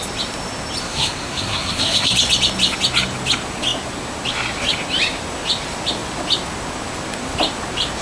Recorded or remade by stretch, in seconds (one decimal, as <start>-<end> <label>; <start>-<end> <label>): 0.0-0.8 recorded; 0.8-2.1 remade; 2.1-8.0 recorded